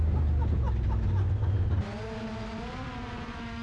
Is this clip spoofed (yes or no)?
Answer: no